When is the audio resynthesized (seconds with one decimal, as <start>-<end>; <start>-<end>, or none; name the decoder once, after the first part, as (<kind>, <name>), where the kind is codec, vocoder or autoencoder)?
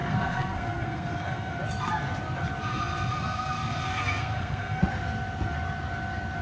0.0-1.6 (codec, SNAC); 3.1-4.8